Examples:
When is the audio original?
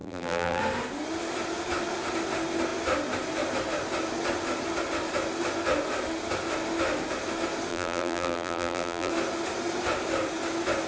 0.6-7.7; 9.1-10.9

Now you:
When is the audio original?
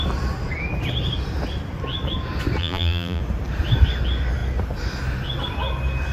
0.0-2.6; 3.2-6.1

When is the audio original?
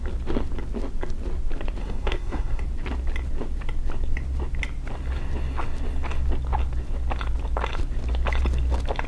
0.0-1.8; 2.6-9.1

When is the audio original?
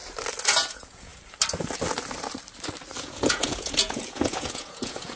0.0-0.7; 1.1-3.0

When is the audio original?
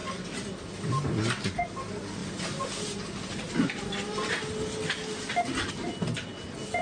0.0-6.8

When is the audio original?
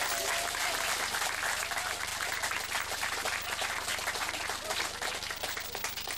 0.0-6.2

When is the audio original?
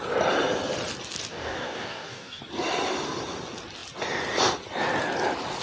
0.0-1.3; 2.4-5.6